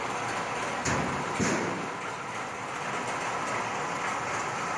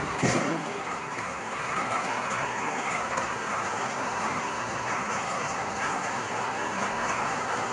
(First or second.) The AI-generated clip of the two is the second